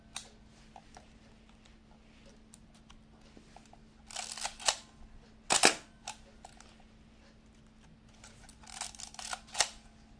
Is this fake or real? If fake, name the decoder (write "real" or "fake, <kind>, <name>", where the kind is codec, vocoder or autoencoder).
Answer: real